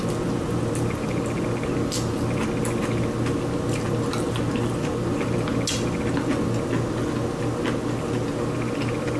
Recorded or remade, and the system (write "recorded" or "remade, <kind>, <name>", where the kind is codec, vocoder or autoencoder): recorded